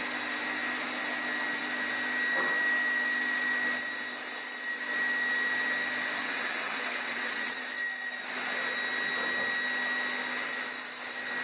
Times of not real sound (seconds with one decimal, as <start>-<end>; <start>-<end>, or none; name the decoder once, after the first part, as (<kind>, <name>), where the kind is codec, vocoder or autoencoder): 6.2-7.6 (vocoder, WaveNeXt)